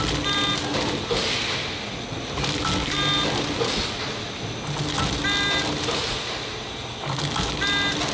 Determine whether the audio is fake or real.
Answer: real